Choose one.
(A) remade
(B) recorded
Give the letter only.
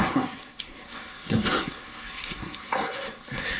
A